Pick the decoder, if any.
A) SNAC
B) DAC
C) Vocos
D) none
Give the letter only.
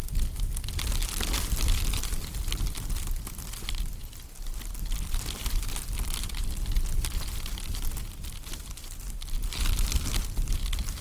D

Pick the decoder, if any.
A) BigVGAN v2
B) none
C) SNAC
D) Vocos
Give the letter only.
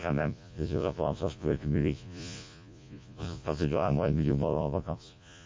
D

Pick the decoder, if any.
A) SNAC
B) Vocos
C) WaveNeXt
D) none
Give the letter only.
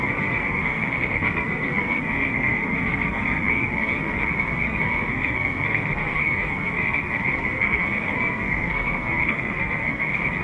A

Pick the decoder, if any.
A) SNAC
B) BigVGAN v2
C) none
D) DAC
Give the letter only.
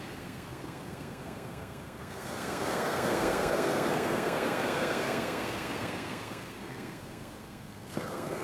A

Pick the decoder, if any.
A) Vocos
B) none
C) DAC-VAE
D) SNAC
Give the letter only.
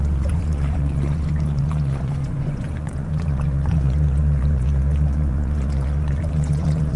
A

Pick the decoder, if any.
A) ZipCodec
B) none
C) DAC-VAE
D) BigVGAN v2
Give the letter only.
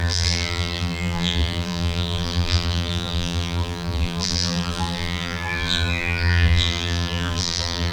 D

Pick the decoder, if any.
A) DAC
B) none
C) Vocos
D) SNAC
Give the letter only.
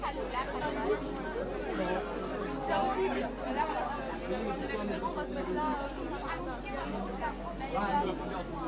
B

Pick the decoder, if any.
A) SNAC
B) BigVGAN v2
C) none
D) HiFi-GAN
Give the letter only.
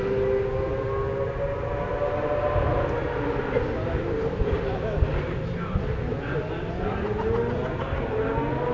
C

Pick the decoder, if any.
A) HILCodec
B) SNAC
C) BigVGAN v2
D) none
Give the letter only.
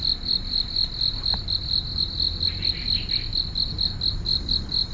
D